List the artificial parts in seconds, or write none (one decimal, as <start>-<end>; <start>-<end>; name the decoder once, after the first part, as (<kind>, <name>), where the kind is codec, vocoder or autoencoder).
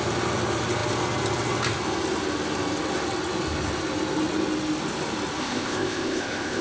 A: 5.4-6.6 (codec, ZipCodec)